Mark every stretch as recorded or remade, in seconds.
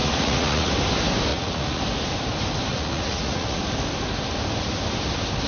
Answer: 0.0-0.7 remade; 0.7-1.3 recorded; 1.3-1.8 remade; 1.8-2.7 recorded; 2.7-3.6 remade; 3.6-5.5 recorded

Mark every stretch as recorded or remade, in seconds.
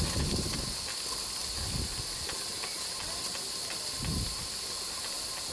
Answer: 0.0-5.5 recorded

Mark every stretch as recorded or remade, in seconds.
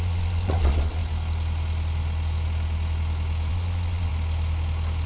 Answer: 0.0-1.0 remade; 1.0-3.5 recorded; 3.5-4.1 remade; 4.1-5.1 recorded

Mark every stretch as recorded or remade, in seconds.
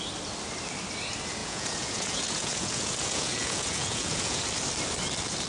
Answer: 0.0-1.4 recorded; 1.4-4.4 remade; 4.4-5.5 recorded